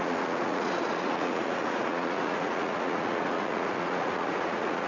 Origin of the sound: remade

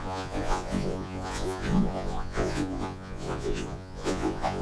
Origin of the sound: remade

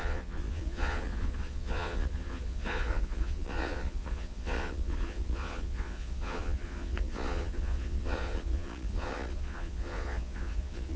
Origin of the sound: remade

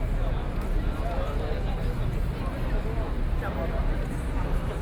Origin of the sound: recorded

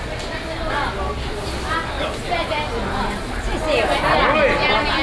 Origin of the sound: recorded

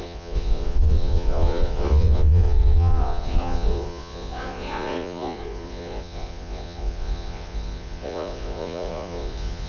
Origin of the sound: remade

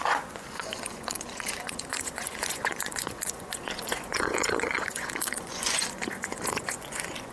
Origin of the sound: remade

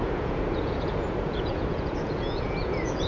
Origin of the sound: remade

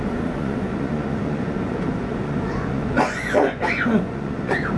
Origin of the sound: remade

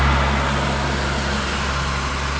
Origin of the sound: recorded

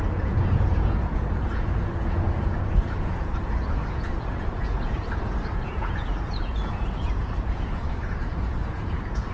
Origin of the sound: remade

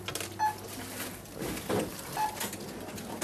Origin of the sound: recorded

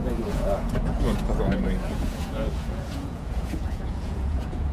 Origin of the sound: remade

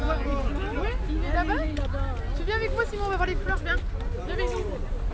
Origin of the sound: recorded